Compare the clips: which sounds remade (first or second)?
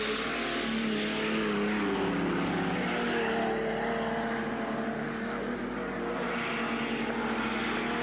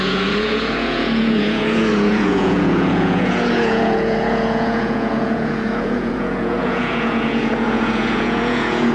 second